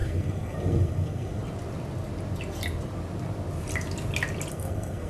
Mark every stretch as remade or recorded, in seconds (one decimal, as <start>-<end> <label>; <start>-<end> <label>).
0.0-1.4 remade; 1.4-4.5 recorded; 4.5-5.1 remade